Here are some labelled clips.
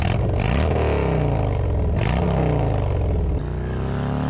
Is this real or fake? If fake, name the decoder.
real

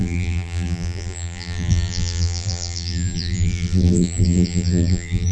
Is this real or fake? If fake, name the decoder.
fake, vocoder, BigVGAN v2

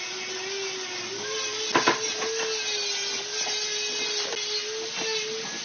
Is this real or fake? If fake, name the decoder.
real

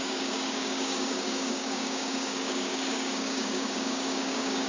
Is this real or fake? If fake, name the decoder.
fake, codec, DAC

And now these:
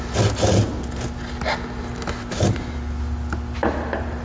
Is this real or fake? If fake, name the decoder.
real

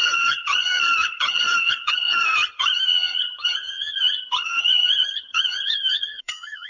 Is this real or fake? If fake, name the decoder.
fake, vocoder, HiFi-GAN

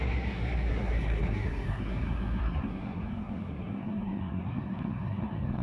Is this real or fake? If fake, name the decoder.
fake, codec, SNAC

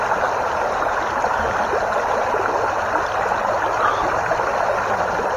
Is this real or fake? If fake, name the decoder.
real